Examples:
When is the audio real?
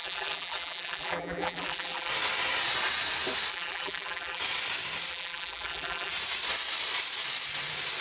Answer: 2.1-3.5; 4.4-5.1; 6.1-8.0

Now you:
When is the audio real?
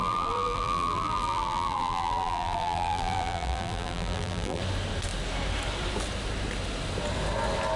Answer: 4.6-7.8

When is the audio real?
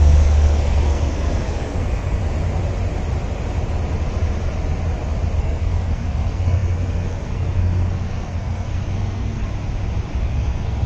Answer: 2.2-5.4; 9.5-10.2